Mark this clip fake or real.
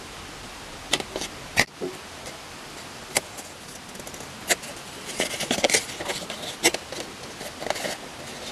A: real